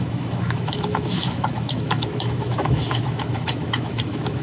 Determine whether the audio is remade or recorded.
remade